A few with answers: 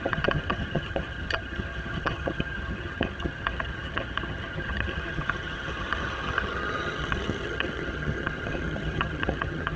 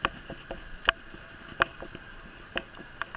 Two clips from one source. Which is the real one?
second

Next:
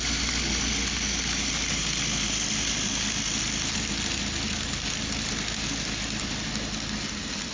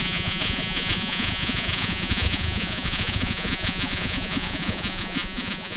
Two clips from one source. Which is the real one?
first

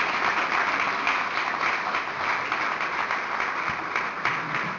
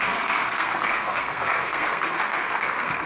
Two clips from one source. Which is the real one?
first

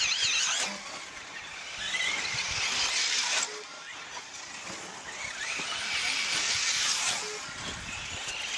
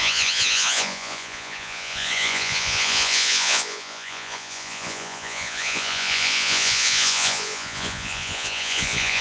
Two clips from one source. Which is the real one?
first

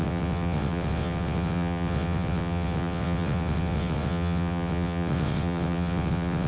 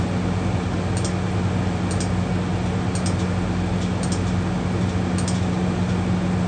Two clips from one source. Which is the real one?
second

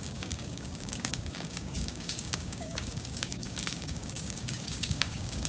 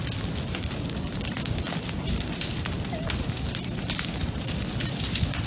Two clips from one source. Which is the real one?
second